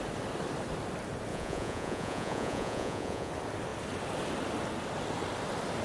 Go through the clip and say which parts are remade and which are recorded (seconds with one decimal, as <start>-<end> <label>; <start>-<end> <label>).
0.0-1.3 recorded; 1.3-3.3 remade; 3.3-5.8 recorded